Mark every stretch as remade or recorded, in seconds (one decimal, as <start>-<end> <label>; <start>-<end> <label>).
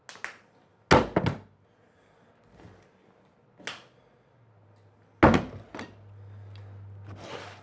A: 0.0-7.6 recorded